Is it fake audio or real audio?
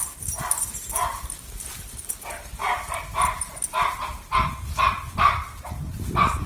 fake